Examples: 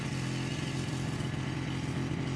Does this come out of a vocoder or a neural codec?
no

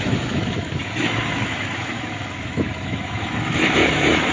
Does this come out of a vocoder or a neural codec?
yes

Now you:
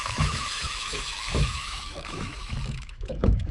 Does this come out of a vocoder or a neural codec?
yes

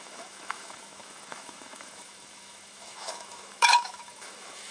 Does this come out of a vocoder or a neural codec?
yes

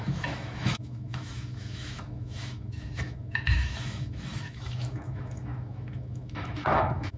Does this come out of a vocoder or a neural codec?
yes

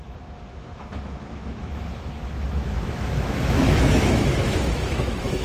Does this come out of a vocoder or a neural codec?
yes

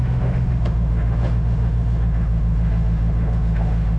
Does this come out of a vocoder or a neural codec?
yes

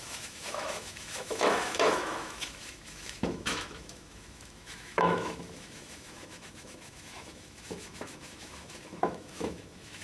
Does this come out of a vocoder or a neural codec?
yes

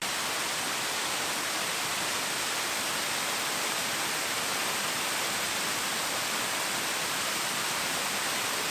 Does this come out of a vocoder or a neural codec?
no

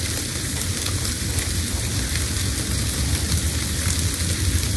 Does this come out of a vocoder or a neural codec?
no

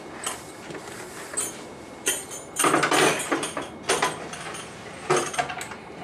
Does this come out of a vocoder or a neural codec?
no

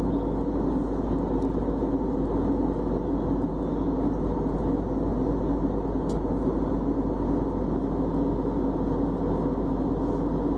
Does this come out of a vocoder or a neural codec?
no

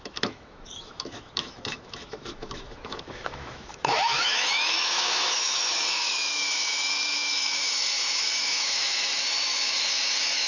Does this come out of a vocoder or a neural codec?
yes